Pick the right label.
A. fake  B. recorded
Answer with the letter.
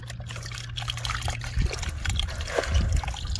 B